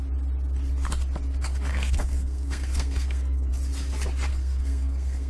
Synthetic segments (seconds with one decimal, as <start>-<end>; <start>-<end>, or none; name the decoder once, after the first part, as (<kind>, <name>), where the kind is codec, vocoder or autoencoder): 1.7-3.5 (codec, SNAC); 4.3-5.3